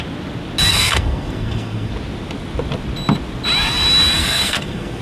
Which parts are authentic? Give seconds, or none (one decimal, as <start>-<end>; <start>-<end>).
0.0-0.7; 1.9-4.2